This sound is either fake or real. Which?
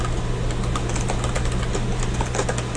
real